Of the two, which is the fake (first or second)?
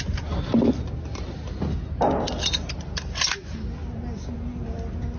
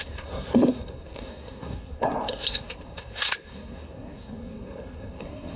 second